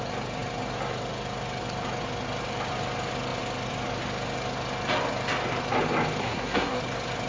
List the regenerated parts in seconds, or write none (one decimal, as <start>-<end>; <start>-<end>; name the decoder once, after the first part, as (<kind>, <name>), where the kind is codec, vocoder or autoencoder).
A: 6.2-6.8 (codec, SNAC)